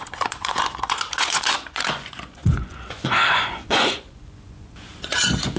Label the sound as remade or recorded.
remade